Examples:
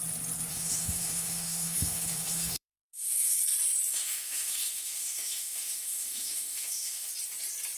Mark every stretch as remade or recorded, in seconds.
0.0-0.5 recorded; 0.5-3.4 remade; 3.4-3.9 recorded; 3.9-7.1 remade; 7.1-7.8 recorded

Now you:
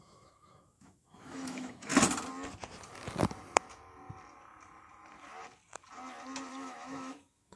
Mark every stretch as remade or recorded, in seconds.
0.0-1.9 remade; 1.9-6.5 recorded; 6.5-7.6 remade

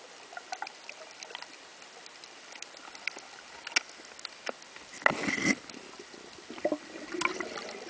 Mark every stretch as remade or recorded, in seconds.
0.0-7.9 recorded

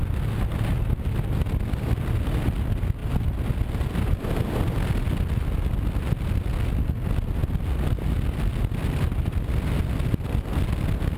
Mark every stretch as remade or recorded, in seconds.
0.0-11.2 recorded

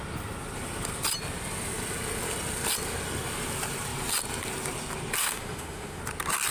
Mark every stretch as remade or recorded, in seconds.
0.0-5.2 recorded; 5.2-6.0 remade; 6.0-6.5 recorded

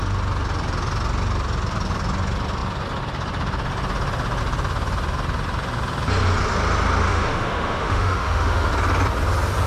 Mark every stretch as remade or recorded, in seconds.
0.0-7.1 recorded; 7.1-8.7 remade; 8.7-9.7 recorded